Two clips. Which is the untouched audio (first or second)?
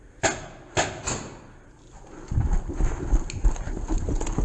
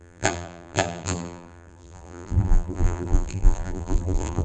first